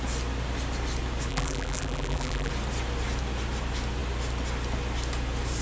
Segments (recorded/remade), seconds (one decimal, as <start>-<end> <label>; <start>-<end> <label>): 0.0-1.3 recorded; 1.3-2.5 remade; 2.5-5.6 recorded